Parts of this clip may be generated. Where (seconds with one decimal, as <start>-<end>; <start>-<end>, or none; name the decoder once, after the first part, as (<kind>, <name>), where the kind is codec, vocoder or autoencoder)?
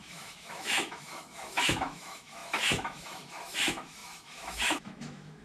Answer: 0.0-5.4 (autoencoder, DAC-VAE)